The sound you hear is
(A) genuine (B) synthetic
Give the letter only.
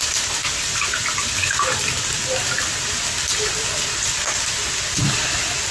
A